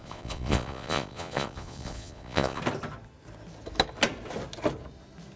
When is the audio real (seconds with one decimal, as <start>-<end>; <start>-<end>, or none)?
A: 2.6-5.4